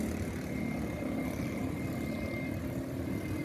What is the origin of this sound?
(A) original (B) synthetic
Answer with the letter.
A